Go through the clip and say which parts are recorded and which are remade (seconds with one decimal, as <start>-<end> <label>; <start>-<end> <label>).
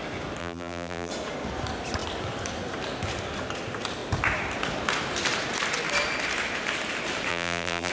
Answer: 0.0-0.4 recorded; 0.4-1.1 remade; 1.1-7.3 recorded; 7.3-7.9 remade